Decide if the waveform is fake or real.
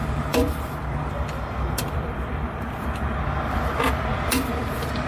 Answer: fake